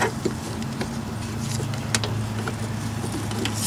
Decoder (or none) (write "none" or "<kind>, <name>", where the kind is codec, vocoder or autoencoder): none